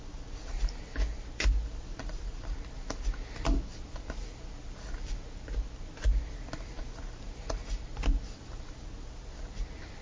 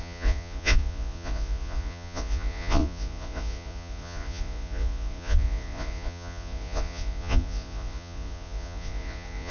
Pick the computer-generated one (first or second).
second